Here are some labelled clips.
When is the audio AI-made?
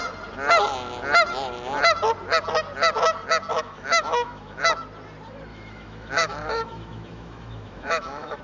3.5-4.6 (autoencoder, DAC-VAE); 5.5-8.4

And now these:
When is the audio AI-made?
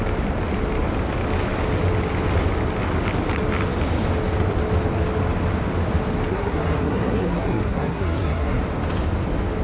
6.3-8.6 (codec, SNAC)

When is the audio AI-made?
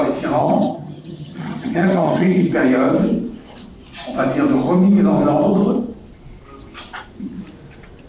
0.4-2.5 (vocoder, HiFi-GAN)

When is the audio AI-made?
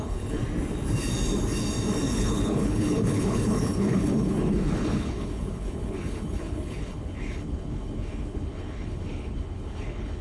0.0-0.4 (codec, HILCodec); 2.1-10.2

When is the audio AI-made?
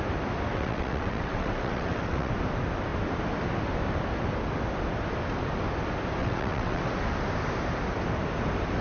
0.5-2.3 (vocoder, WaveNeXt); 6.2-6.8